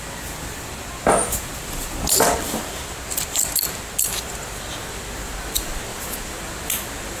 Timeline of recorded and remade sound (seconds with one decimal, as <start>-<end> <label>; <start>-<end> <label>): 0.0-7.2 recorded